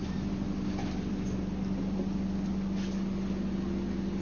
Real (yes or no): yes